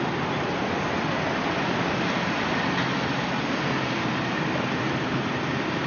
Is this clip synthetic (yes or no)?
no